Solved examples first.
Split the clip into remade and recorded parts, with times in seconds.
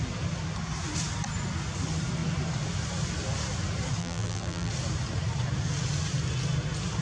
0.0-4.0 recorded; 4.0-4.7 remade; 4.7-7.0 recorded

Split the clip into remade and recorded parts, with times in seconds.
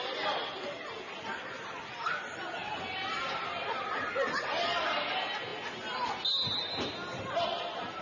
0.0-8.0 recorded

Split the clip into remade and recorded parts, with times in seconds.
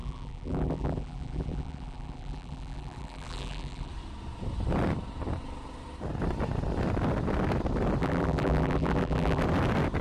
0.0-3.9 remade; 3.9-8.0 recorded; 8.0-9.4 remade; 9.4-10.0 recorded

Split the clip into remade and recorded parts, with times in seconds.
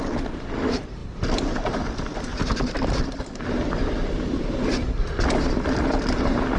0.0-1.0 recorded; 1.0-1.9 remade; 1.9-2.3 recorded; 2.3-5.8 remade; 5.8-6.6 recorded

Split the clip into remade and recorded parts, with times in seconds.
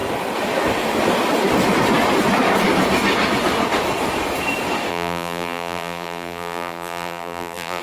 0.0-4.9 recorded; 4.9-7.8 remade